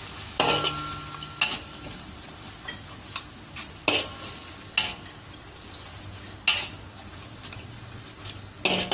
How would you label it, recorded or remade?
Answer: recorded